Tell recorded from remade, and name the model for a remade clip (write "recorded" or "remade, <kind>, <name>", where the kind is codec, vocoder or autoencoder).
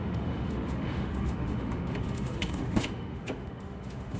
remade, autoencoder, DAC-VAE